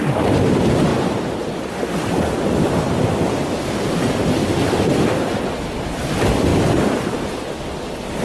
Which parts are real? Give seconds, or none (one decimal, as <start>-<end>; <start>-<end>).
0.0-8.2